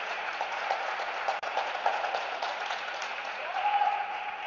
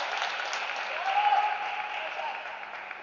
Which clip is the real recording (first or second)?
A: second